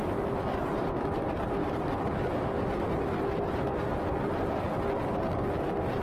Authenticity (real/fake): real